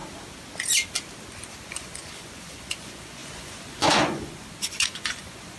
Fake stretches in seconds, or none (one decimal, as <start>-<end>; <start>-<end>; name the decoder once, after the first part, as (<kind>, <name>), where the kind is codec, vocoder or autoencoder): 1.7-5.6 (vocoder, Vocos)